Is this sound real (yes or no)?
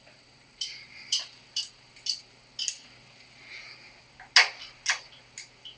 yes